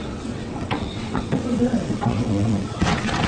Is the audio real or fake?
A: fake